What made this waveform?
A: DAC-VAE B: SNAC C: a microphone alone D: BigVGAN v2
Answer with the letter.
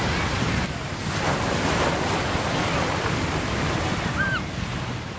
C